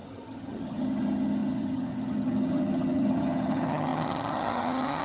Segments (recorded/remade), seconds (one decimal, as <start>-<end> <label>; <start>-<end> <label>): 0.0-5.0 remade